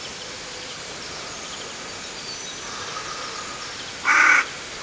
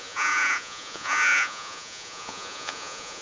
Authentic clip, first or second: first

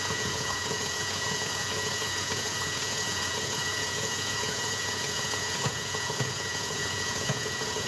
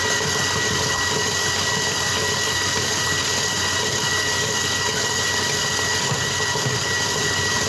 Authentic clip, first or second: second